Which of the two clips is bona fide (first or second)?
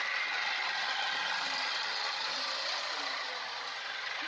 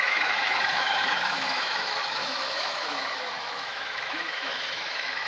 first